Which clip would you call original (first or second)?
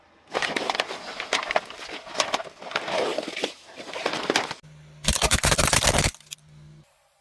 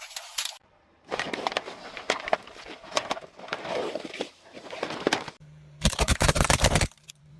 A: first